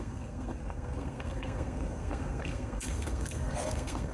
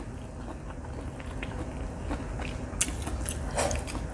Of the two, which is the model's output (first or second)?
first